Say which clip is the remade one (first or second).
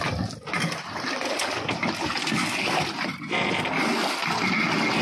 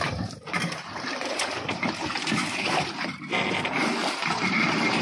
second